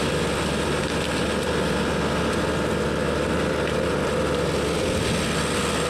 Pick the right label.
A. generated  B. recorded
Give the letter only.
B